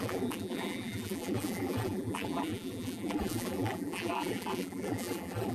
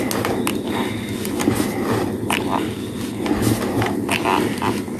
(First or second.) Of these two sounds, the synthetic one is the first